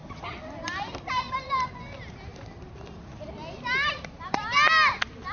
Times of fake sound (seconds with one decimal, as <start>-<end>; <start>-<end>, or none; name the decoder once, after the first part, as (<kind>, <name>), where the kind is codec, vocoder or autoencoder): none

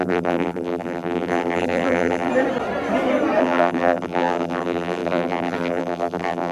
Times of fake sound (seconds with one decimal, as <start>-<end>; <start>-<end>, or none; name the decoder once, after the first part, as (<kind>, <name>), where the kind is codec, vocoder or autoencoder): 0.0-2.3 (vocoder, BigVGAN v2); 3.4-6.5